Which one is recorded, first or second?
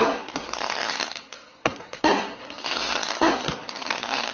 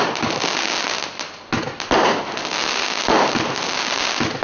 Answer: second